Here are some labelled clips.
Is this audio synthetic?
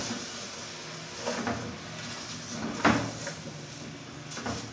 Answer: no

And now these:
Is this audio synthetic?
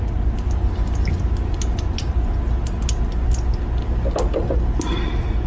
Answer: no